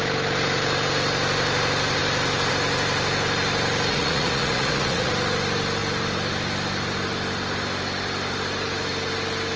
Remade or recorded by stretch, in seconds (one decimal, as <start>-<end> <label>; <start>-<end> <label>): 0.0-3.9 recorded; 3.9-5.1 remade; 5.1-9.6 recorded

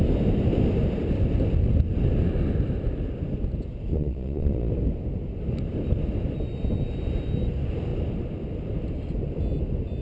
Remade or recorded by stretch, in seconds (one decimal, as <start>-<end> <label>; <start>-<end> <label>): 0.0-3.9 recorded; 3.9-4.7 remade; 4.7-10.0 recorded

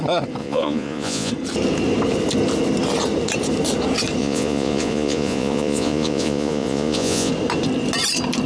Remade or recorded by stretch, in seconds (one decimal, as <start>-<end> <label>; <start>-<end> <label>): 0.0-0.4 recorded; 0.4-1.3 remade; 1.3-4.2 recorded; 4.2-7.3 remade; 7.3-8.5 recorded

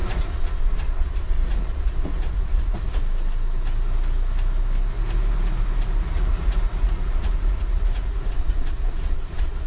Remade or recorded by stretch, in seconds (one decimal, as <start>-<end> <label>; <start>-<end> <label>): 0.0-3.0 remade; 3.0-6.0 recorded; 6.0-9.7 remade